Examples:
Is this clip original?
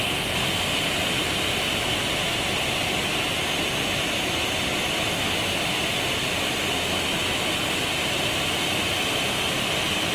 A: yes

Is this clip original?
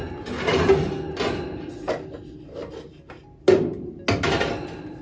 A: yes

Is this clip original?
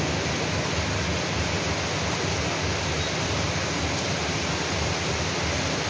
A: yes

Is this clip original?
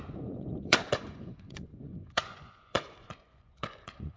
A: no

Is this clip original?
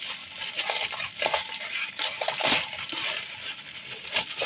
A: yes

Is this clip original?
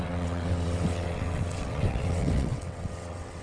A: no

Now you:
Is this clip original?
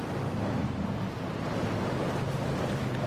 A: yes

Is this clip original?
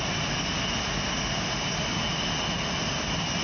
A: yes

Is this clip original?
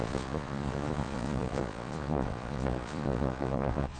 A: no